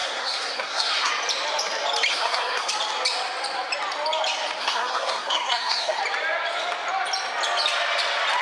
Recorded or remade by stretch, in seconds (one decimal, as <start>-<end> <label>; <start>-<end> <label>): 0.0-1.1 remade; 1.1-2.1 recorded; 2.1-2.7 remade; 2.7-4.6 recorded; 4.6-6.0 remade; 6.0-8.4 recorded